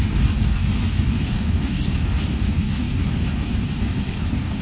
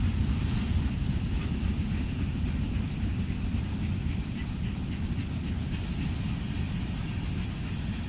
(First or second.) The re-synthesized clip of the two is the first